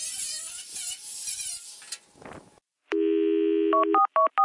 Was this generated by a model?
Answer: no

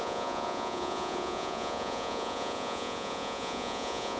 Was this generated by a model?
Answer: yes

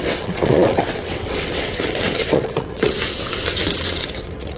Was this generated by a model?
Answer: yes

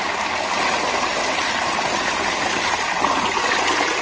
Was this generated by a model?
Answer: no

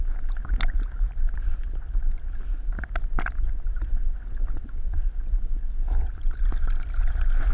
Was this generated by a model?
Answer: no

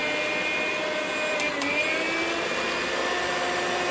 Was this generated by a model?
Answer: no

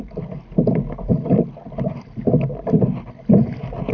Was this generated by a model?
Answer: no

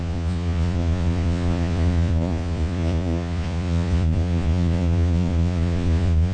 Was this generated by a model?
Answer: yes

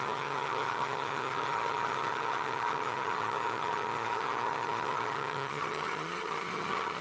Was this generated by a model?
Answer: yes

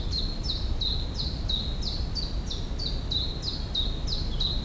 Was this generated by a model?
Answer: no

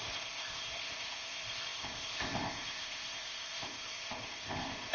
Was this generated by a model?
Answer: yes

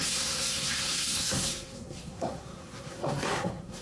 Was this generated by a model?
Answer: yes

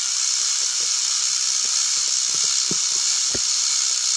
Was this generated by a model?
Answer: no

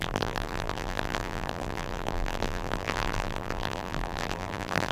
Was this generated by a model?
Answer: yes